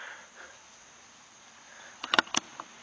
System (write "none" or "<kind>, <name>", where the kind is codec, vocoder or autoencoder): none